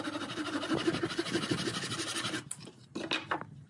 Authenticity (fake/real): real